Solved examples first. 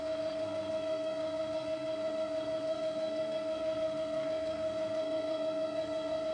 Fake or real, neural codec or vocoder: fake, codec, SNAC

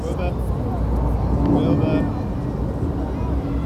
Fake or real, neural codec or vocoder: real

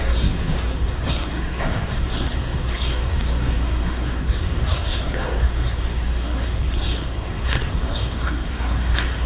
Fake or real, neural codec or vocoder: fake, codec, SNAC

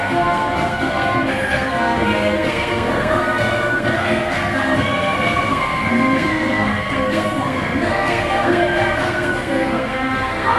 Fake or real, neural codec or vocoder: fake, codec, SNAC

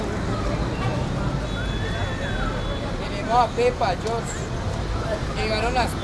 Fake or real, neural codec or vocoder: real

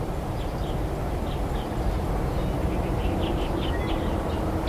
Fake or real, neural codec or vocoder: real